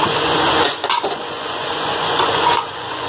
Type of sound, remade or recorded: remade